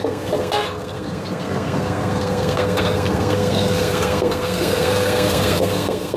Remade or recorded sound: remade